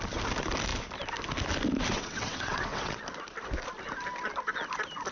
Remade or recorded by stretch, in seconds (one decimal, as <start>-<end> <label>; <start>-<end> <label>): 0.0-1.9 recorded; 1.9-3.0 remade; 3.0-5.1 recorded